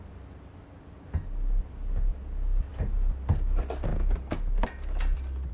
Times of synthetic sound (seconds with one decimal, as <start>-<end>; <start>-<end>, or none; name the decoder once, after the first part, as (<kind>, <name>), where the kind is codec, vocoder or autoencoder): none